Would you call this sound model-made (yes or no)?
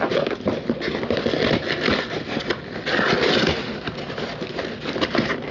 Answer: no